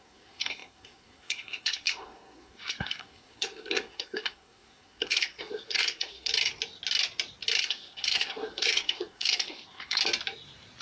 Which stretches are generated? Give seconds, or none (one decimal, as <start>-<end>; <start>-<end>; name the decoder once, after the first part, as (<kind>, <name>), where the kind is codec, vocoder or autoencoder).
0.0-6.3 (codec, SNAC); 7.6-10.0